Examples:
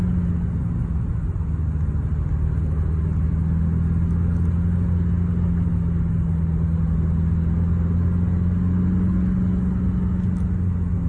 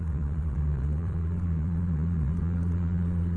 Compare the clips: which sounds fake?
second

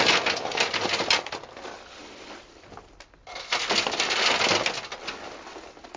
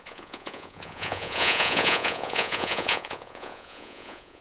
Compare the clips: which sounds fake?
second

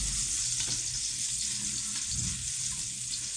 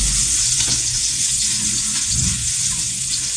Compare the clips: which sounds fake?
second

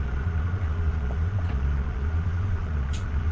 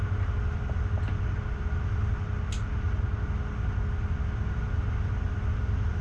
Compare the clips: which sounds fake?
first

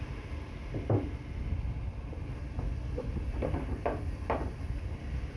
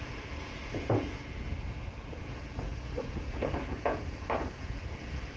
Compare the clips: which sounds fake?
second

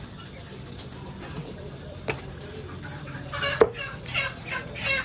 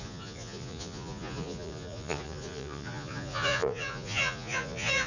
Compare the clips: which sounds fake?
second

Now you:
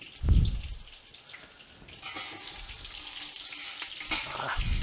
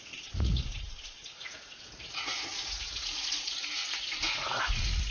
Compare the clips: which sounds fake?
second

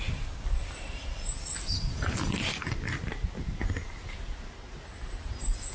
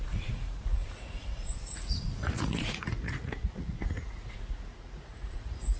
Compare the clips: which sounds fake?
second